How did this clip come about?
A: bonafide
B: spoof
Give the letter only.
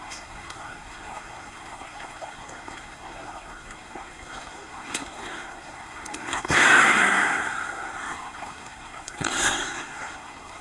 B